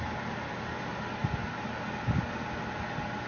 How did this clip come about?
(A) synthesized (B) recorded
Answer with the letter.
B